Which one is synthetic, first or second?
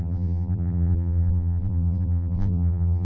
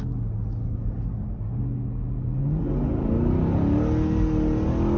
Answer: first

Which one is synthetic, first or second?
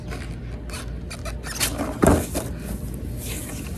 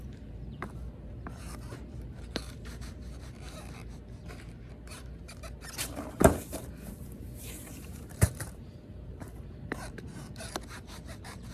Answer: second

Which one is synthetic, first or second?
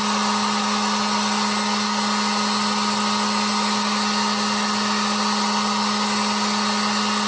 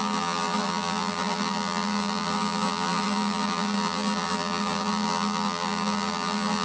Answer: second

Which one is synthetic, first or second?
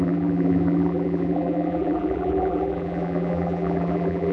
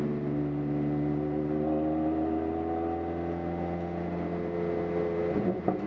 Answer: first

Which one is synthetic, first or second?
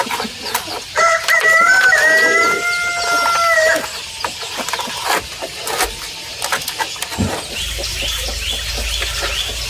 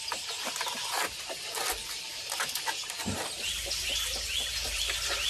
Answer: second